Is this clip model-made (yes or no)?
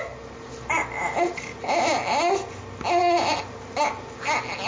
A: no